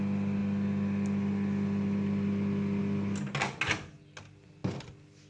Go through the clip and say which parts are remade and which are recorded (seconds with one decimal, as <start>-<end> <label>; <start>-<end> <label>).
0.0-5.3 recorded